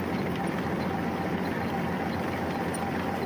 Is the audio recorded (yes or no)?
yes